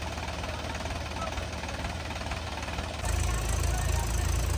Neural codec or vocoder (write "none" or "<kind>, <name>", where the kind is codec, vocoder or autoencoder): none